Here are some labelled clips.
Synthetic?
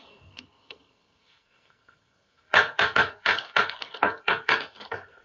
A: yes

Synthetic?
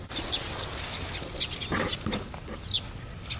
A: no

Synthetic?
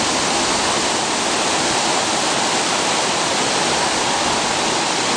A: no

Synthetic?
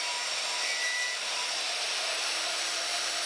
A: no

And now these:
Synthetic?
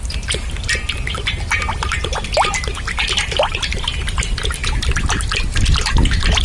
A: yes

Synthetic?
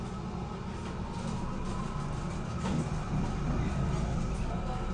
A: no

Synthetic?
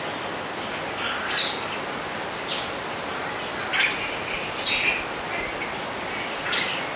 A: no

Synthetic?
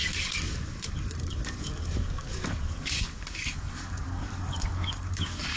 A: yes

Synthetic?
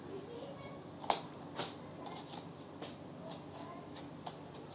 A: no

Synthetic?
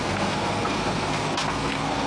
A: yes